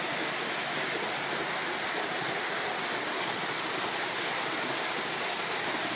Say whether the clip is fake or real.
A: real